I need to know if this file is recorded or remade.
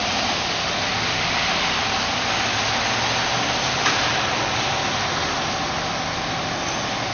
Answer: recorded